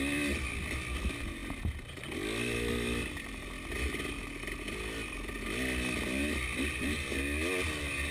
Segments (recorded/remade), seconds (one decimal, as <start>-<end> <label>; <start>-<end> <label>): 0.0-8.1 recorded